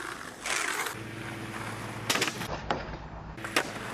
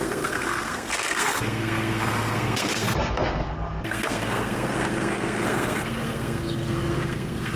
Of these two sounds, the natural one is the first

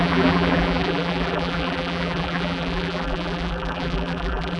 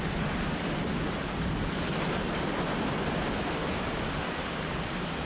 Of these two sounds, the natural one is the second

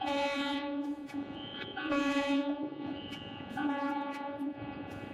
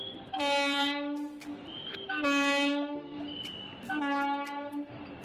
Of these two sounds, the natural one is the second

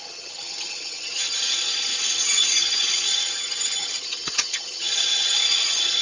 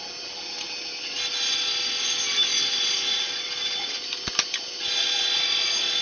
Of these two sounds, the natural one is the second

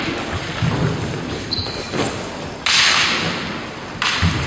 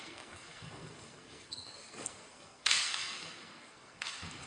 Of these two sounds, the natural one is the first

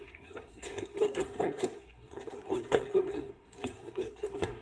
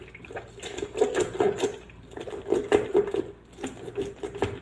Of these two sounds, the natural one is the second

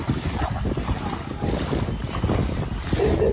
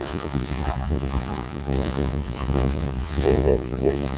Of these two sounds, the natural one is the first